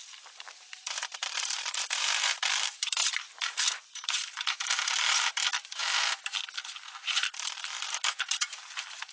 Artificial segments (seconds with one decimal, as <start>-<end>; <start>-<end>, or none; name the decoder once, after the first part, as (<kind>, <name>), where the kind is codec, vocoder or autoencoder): 0.0-3.0 (vocoder, BigVGAN v2); 3.6-5.8; 6.7-9.1